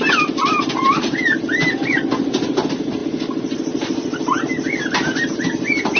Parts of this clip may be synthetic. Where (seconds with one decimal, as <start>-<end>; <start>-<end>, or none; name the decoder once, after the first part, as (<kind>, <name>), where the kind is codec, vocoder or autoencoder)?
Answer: none